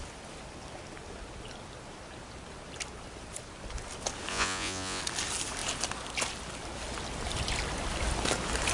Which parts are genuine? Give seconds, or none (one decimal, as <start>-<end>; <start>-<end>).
0.0-4.3; 5.0-8.7